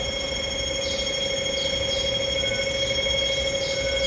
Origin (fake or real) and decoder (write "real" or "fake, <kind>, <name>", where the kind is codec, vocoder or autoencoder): real